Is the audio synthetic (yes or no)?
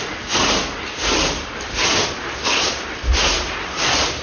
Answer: no